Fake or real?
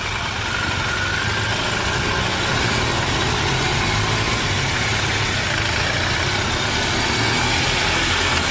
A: real